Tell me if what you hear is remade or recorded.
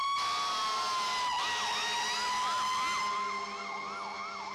recorded